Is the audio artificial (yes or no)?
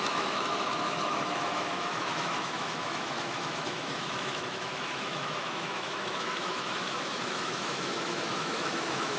yes